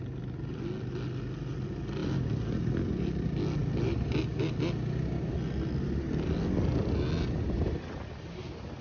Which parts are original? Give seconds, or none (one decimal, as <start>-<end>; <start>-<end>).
0.0-8.8